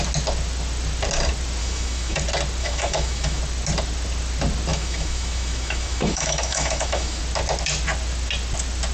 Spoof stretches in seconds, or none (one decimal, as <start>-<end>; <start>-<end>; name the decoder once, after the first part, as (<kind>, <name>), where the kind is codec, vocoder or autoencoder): 1.6-2.2 (autoencoder, DAC-VAE); 2.6-3.4; 4.7-7.2